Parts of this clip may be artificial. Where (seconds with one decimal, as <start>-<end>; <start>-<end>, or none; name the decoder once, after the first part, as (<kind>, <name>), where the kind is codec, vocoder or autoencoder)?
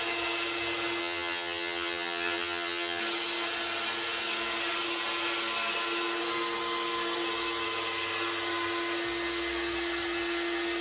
1.0-3.0 (vocoder, HiFi-GAN)